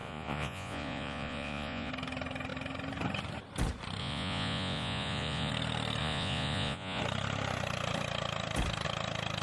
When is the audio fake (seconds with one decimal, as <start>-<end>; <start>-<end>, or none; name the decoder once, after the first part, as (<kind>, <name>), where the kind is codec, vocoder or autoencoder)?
0.0-1.9 (vocoder, Vocos); 4.0-5.5; 6.0-7.0